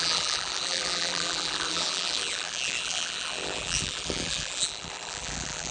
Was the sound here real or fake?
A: fake